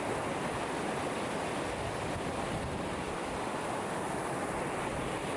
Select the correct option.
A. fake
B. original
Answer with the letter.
B